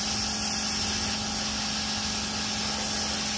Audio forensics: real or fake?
real